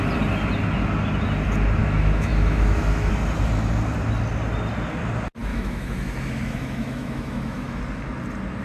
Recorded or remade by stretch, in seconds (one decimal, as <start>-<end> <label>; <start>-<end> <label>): 0.0-1.8 recorded; 1.8-3.1 remade; 3.1-5.5 recorded; 5.5-7.8 remade; 7.8-8.6 recorded